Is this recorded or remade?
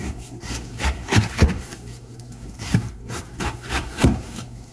remade